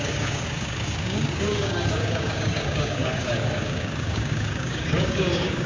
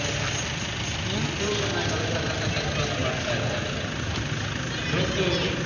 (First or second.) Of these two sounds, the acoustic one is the second